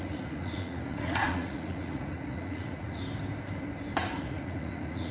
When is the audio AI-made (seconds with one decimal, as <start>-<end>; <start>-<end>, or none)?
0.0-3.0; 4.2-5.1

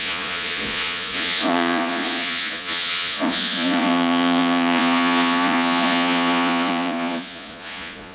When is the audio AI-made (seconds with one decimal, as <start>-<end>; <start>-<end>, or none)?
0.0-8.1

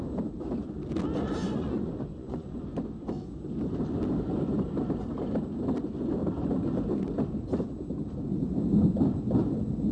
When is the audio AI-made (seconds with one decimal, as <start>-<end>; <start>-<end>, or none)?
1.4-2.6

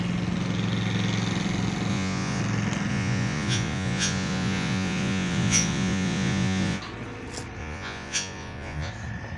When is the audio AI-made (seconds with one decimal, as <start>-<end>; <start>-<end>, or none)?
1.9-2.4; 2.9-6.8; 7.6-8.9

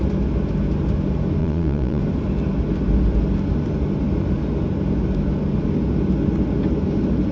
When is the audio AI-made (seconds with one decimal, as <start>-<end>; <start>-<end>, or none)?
1.4-2.0